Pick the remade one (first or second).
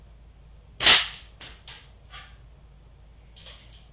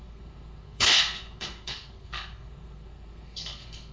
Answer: second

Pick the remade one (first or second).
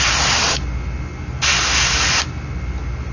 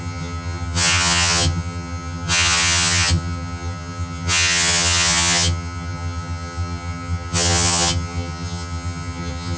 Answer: second